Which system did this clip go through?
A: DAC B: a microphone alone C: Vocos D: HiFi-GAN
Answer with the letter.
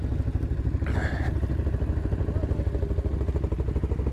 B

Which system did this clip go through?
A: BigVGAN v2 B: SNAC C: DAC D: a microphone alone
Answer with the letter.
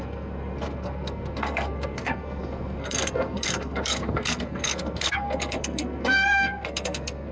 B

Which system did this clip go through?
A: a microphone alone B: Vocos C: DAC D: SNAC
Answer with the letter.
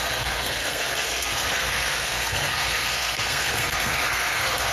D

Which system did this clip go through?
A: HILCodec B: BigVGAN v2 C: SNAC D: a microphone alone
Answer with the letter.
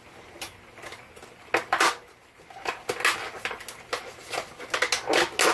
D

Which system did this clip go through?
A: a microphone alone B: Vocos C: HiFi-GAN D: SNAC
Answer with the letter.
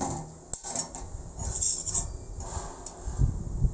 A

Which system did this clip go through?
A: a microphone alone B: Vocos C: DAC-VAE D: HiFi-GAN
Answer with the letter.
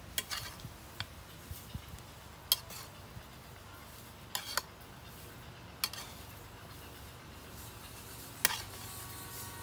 A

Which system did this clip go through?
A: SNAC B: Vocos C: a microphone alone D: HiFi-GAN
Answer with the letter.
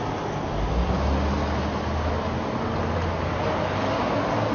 C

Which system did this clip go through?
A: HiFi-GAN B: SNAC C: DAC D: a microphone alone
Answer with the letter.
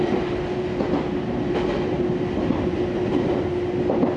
D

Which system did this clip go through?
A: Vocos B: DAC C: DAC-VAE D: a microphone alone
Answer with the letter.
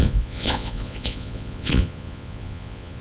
A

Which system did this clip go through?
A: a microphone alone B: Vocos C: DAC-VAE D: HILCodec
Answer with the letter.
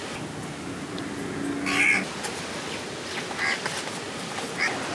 A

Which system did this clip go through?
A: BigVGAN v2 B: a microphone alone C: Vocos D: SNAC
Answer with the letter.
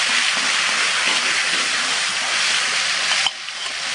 B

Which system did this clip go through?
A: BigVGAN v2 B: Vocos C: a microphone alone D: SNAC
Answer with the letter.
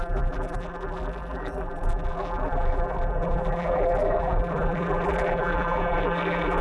A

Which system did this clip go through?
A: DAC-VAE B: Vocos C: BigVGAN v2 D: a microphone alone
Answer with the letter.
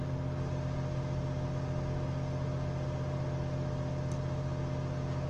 D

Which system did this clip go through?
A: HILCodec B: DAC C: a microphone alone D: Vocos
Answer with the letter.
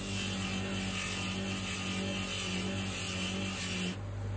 C